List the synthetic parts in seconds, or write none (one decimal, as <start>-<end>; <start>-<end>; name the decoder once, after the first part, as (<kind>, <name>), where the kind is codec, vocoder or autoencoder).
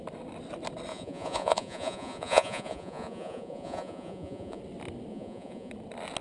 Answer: 0.9-4.6 (vocoder, Vocos); 5.1-5.7